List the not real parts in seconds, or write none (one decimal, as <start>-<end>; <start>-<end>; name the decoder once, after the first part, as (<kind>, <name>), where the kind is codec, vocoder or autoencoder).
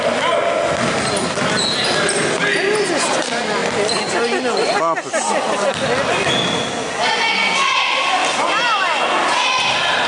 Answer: none